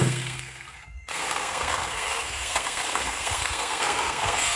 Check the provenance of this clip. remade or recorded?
remade